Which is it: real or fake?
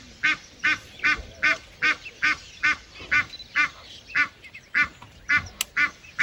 real